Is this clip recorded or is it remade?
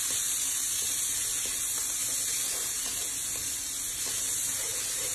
recorded